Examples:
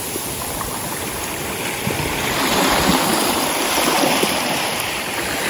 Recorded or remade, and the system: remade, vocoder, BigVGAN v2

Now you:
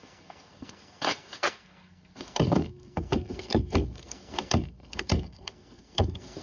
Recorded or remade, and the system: remade, codec, SNAC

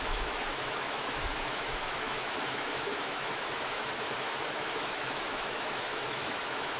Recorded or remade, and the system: remade, autoencoder, DAC-VAE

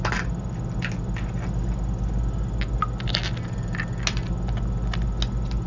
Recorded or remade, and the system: recorded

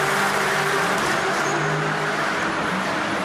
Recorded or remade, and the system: recorded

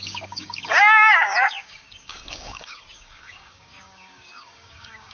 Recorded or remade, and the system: remade, codec, DAC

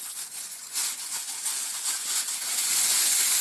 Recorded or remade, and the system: remade, vocoder, Vocos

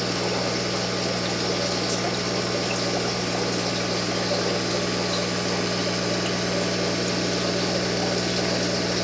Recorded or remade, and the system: recorded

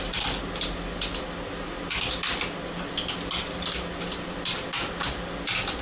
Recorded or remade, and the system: recorded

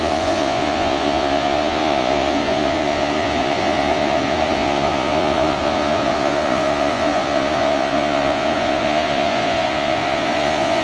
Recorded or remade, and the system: remade, vocoder, Vocos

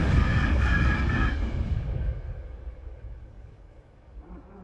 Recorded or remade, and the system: remade, codec, DAC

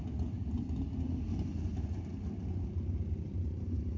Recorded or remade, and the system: recorded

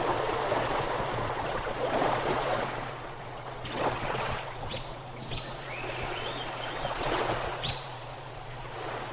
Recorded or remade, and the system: remade, vocoder, Vocos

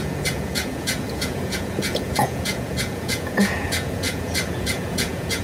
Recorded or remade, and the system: remade, vocoder, Vocos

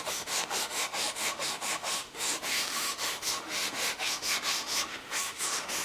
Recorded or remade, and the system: remade, autoencoder, DAC-VAE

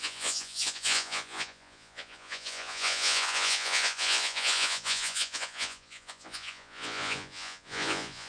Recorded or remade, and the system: remade, vocoder, Vocos